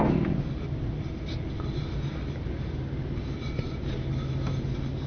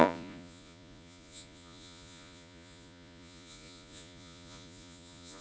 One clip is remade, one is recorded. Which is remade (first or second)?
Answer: second